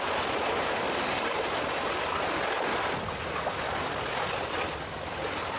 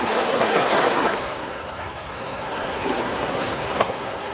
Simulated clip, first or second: second